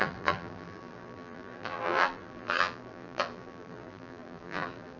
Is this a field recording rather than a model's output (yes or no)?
no